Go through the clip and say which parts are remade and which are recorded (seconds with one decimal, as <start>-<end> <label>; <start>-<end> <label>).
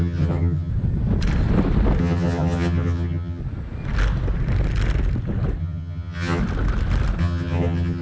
0.0-0.7 remade; 0.7-2.0 recorded; 2.0-3.4 remade; 3.4-5.6 recorded; 5.6-6.4 remade; 6.4-7.2 recorded; 7.2-8.0 remade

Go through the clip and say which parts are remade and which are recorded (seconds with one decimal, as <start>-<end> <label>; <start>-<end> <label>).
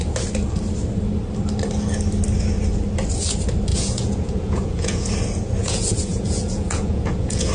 0.0-3.7 recorded; 3.7-5.1 remade; 5.1-5.6 recorded; 5.6-7.5 remade